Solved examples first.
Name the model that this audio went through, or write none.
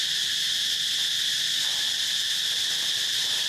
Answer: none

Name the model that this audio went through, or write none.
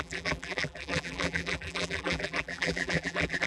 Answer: vocoder, BigVGAN v2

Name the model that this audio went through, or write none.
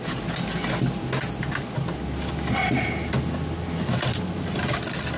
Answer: none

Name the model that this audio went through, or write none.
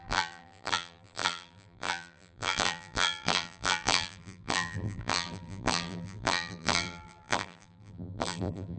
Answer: vocoder, BigVGAN v2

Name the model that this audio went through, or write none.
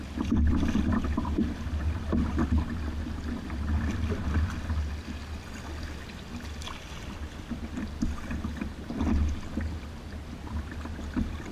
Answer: none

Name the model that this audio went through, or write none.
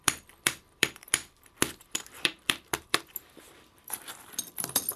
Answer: vocoder, BigVGAN v2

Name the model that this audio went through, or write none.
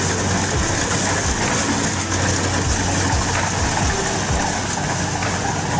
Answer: none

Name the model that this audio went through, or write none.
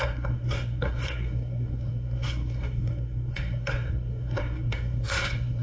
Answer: codec, SNAC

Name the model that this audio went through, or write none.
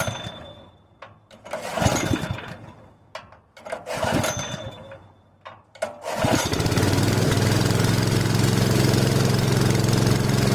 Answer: none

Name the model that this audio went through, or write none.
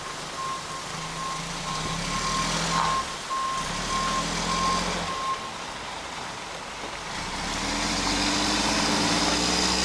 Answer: none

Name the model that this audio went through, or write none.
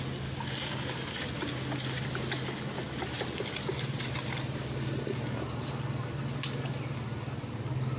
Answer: none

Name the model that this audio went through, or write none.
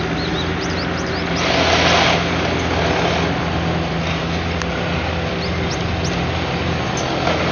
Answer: none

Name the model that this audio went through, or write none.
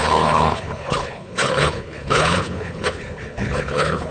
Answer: codec, HILCodec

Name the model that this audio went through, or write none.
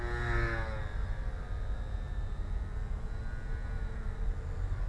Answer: none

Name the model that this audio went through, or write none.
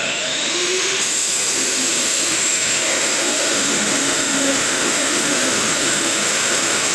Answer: autoencoder, DAC-VAE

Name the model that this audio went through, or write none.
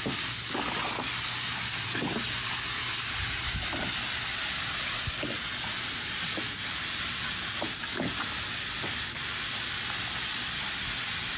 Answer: none